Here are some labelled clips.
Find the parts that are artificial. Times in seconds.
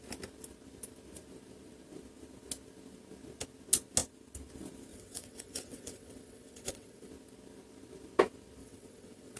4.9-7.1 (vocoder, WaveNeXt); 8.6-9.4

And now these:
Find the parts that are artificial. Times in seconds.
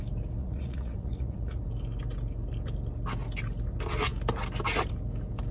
0.4-1.6 (vocoder, Vocos)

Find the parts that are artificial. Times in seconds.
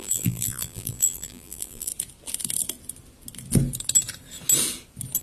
0.0-1.9 (vocoder, BigVGAN v2)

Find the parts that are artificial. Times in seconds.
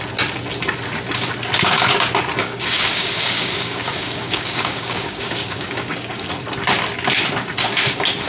2.4-6.3 (codec, DAC)